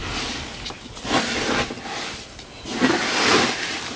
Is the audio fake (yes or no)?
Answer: no